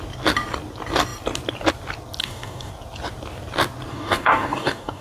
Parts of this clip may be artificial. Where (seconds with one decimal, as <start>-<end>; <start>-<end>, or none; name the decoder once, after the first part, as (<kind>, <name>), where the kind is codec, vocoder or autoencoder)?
2.2-2.7 (codec, DAC); 3.9-5.0